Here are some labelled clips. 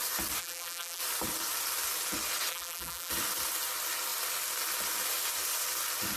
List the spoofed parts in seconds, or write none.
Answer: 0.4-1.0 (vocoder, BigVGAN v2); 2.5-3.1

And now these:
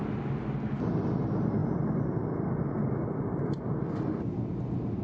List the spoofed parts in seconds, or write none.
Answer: none

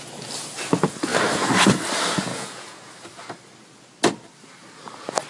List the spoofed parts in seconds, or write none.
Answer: 2.3-2.9 (vocoder, Vocos)

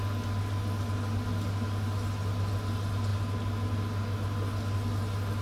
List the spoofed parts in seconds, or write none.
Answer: none

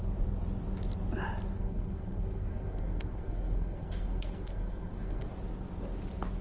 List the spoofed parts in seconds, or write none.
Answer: 1.5-5.3 (codec, SNAC)

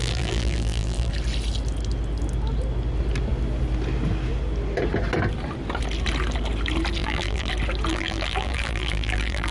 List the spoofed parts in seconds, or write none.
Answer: 0.0-1.1 (vocoder, BigVGAN v2); 7.0-7.5; 7.9-9.5

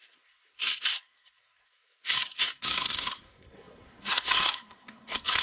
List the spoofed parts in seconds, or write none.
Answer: 0.0-5.4 (codec, SNAC)